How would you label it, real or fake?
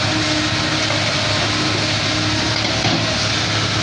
real